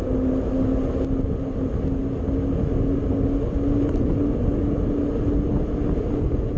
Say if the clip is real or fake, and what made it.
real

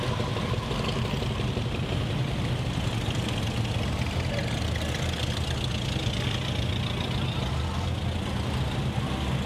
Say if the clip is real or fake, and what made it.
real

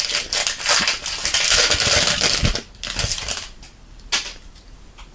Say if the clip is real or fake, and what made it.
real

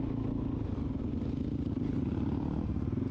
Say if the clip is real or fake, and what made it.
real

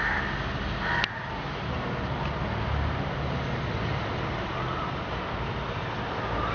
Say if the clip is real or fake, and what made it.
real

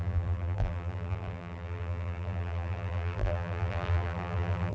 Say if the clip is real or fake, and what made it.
fake, vocoder, BigVGAN v2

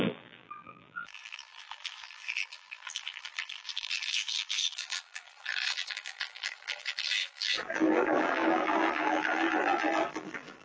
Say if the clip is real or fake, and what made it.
fake, vocoder, BigVGAN v2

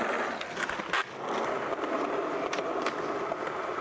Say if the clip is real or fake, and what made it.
real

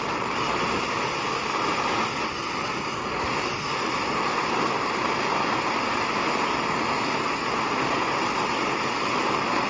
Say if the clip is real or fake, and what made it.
real